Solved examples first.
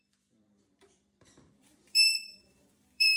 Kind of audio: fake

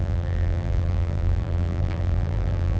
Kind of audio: fake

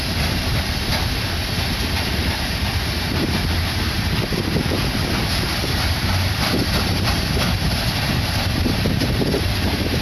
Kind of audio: fake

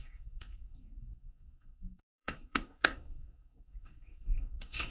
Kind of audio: fake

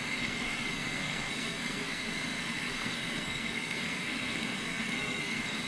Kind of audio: fake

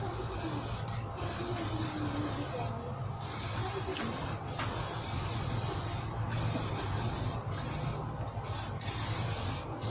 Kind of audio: real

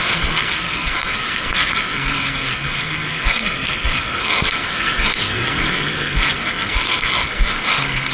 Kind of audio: fake